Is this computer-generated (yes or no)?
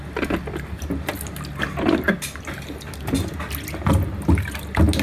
no